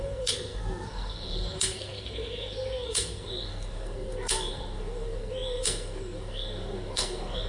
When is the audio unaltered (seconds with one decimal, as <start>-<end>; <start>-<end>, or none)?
none